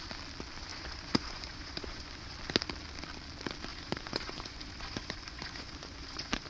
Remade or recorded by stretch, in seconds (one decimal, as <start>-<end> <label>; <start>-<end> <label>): 0.0-0.7 recorded; 0.7-2.4 remade; 2.4-3.7 recorded; 3.7-6.5 remade